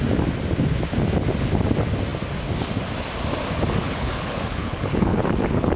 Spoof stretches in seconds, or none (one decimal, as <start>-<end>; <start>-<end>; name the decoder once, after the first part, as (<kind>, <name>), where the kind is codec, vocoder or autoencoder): 3.8-5.8 (codec, HILCodec)